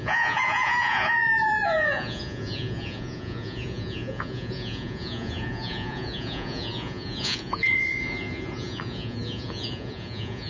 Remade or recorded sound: remade